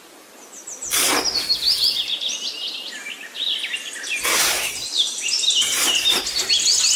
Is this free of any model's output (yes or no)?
yes